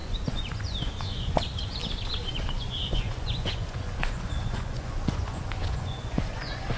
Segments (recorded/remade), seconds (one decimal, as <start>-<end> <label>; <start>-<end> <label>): 0.0-1.8 remade; 1.8-2.3 recorded; 2.3-6.8 remade